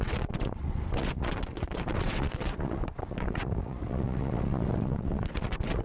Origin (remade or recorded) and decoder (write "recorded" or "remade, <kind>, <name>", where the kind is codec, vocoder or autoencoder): remade, vocoder, WaveNeXt